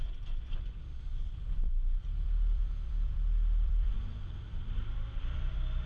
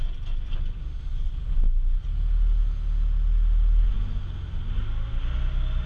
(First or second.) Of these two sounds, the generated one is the first